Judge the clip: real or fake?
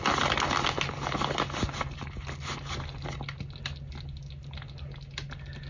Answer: real